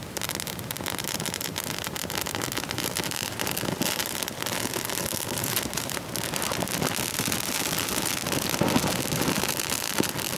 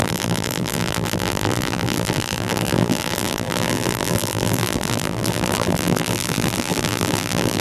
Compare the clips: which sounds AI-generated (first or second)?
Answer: second